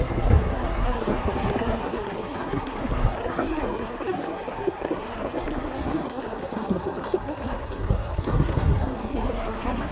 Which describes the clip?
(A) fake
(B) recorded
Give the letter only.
A